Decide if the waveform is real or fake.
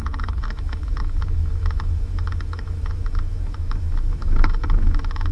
fake